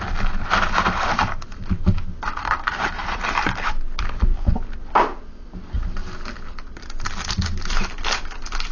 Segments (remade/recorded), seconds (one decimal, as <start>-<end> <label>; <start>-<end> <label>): 0.0-8.7 recorded

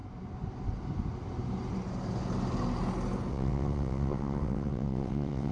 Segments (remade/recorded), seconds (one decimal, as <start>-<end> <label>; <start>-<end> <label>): 0.0-3.3 recorded; 3.3-5.5 remade

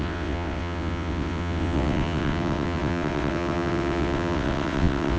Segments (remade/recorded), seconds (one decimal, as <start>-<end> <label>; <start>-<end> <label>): 0.0-5.2 remade

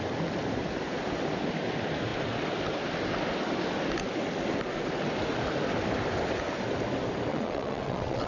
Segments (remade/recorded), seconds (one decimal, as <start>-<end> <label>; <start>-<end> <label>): 0.0-7.3 recorded; 7.3-8.3 remade